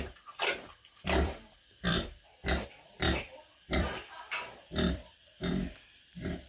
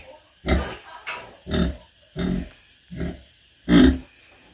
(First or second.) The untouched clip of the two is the second